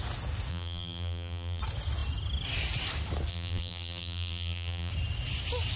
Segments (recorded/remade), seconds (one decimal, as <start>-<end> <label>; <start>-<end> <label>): 0.0-0.5 recorded; 0.5-1.6 remade; 1.6-3.3 recorded; 3.3-4.9 remade; 4.9-5.8 recorded